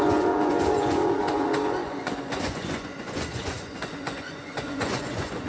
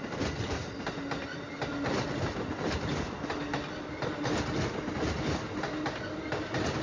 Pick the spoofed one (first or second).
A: first